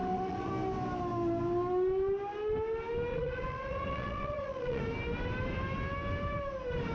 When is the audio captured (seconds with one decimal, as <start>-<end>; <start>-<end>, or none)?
0.5-3.1; 4.8-6.9